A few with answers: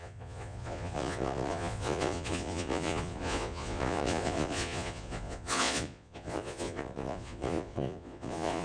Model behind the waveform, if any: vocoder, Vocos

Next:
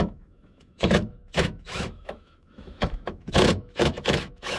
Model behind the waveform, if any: autoencoder, DAC-VAE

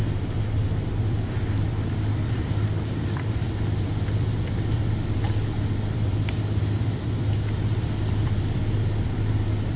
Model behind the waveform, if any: vocoder, BigVGAN v2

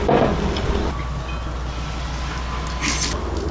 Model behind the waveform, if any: none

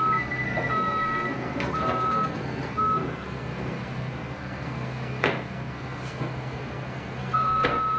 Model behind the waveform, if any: codec, SNAC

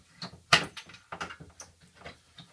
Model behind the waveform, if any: none